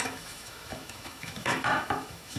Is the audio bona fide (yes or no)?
no